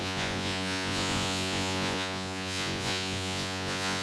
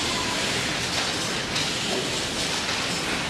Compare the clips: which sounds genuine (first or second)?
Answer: second